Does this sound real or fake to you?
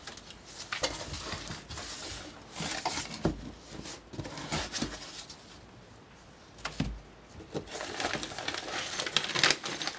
real